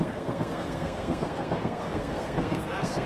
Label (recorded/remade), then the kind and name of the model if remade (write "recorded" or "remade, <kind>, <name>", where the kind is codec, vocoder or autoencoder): remade, codec, SNAC